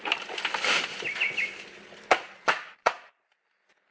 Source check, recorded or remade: remade